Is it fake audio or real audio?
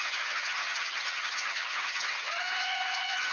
fake